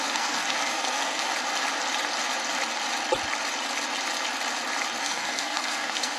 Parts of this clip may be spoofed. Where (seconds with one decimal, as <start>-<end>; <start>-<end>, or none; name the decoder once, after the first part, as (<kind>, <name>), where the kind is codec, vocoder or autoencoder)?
0.0-1.3 (codec, SNAC); 5.0-6.2